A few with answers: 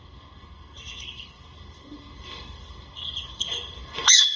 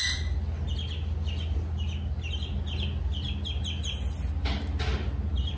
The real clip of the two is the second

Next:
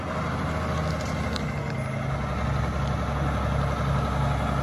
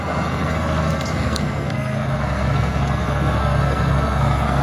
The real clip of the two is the first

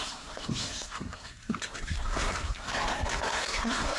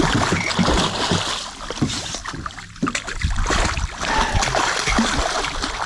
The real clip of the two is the second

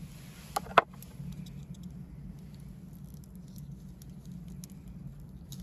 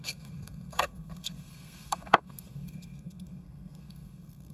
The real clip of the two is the first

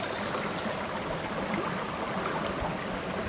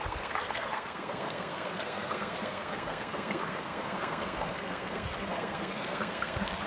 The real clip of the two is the first